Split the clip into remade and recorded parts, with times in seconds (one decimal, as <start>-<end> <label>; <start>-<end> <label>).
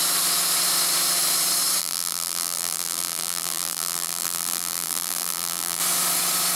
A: 0.0-1.8 recorded; 1.8-5.8 remade; 5.8-6.6 recorded